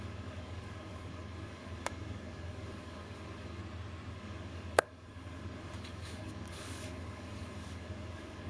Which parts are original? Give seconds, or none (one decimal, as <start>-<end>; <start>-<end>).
3.6-4.1